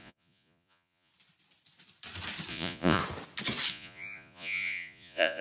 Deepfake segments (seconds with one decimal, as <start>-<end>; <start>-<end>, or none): 0.0-1.1; 2.5-3.0; 3.7-5.4

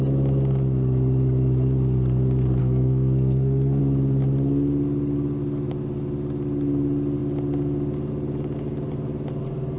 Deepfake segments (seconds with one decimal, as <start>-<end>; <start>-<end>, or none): 2.6-3.8

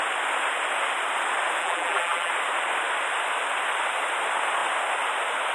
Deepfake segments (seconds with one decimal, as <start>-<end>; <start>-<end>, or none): 1.6-2.3

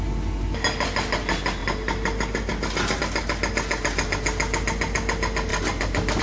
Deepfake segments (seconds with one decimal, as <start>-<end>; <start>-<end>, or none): none